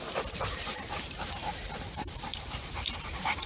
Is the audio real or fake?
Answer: fake